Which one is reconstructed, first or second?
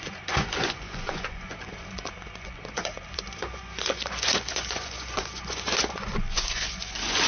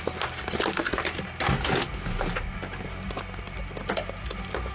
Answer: first